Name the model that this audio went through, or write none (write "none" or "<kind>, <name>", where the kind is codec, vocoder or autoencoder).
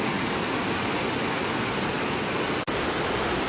none